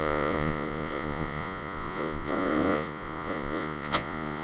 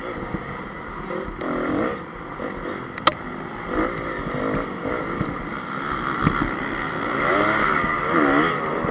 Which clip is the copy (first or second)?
first